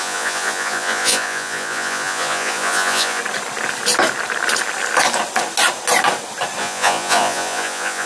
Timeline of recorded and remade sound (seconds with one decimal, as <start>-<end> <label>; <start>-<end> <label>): 0.0-3.2 remade; 3.2-6.6 recorded; 6.6-8.1 remade